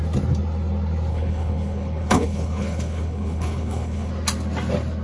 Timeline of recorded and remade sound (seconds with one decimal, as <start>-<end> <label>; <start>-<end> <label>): 0.0-1.1 recorded; 1.1-4.1 remade; 4.1-5.0 recorded